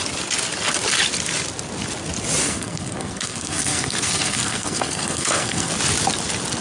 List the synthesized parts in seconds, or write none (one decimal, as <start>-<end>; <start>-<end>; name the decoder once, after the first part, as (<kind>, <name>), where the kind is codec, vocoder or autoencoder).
2.4-5.7 (codec, SNAC)